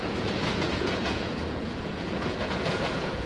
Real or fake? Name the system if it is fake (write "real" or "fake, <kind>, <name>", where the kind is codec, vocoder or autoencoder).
fake, vocoder, Vocos